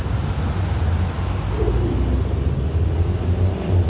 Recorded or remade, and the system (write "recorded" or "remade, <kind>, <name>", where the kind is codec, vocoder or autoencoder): recorded